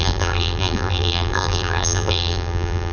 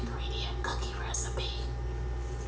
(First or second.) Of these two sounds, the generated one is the first